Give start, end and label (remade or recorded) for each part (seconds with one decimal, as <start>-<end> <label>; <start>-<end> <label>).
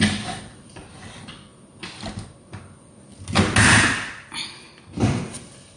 0.0-1.5 remade; 1.5-5.0 recorded; 5.0-5.8 remade